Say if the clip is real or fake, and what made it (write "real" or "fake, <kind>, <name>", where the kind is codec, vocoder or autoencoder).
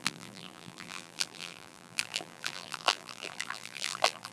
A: fake, vocoder, BigVGAN v2